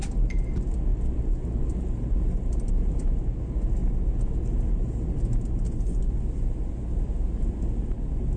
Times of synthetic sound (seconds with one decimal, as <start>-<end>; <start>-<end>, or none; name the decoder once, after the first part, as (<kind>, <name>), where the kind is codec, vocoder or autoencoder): none